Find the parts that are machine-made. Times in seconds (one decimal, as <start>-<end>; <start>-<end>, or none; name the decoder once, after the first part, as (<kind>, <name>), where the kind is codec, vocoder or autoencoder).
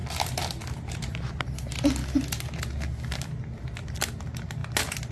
none